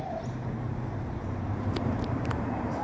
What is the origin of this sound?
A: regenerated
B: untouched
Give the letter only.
A